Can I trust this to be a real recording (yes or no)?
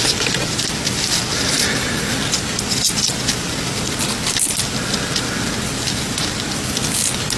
yes